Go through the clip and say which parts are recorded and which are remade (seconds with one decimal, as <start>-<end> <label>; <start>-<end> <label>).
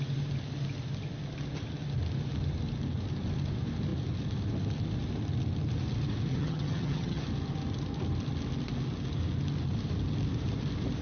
0.0-6.3 recorded; 6.3-7.2 remade; 7.2-11.0 recorded